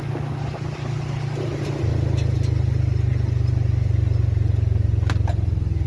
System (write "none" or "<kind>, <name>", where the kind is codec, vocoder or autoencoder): none